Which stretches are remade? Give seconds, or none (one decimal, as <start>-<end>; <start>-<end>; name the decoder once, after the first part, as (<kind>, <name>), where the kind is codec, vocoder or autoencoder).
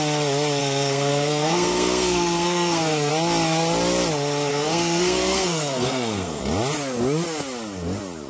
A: 0.6-3.1 (codec, SNAC); 4.5-6.4